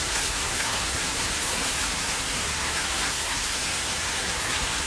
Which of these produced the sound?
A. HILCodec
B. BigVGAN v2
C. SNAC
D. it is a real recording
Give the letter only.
C